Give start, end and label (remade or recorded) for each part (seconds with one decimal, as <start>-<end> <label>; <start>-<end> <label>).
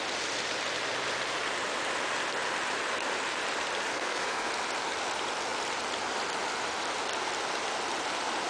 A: 0.0-3.9 recorded; 3.9-4.5 remade; 4.5-8.5 recorded